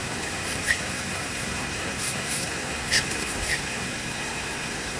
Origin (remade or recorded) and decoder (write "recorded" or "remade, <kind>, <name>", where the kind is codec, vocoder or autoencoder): remade, codec, SNAC